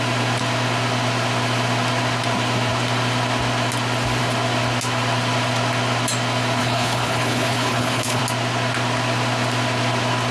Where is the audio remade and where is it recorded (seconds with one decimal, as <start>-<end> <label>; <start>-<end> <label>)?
0.0-6.6 recorded; 6.6-8.2 remade; 8.2-10.3 recorded